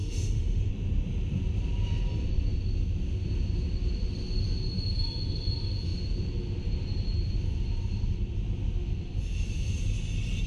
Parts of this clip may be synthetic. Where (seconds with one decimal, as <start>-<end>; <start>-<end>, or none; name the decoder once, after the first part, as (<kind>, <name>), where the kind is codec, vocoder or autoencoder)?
0.0-0.7 (autoencoder, DAC-VAE)